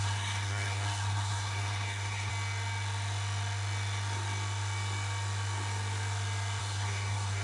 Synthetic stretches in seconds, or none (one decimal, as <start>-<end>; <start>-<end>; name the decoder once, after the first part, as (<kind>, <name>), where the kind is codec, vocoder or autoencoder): 0.0-2.3 (codec, SNAC); 6.6-7.4